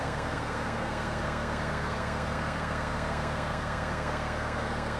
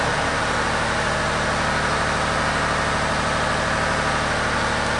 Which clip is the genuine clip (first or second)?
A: second